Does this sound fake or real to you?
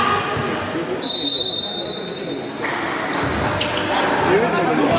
real